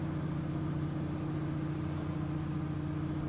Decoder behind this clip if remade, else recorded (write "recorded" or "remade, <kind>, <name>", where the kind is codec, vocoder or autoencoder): recorded